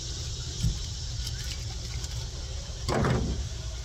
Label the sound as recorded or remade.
recorded